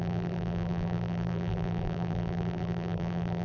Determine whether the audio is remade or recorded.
remade